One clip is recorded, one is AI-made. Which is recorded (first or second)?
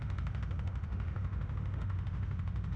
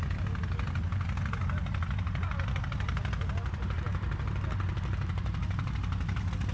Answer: second